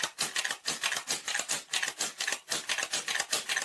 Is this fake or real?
real